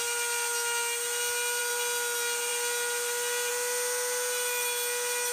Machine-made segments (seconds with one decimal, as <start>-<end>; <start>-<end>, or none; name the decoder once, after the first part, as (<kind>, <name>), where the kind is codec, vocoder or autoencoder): none